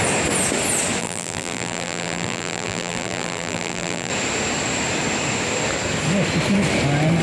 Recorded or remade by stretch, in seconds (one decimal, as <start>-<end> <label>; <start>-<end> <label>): 0.0-1.0 recorded; 1.0-4.1 remade; 4.1-7.2 recorded